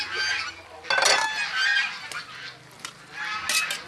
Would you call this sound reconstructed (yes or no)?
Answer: no